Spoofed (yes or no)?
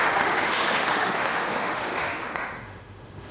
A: yes